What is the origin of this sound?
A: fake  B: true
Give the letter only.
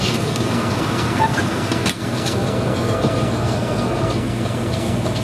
A